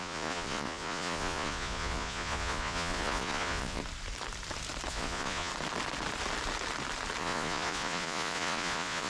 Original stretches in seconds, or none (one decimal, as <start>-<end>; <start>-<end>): 3.8-4.9; 5.5-7.2